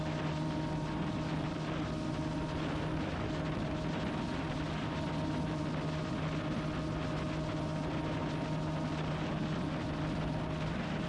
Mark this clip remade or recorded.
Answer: recorded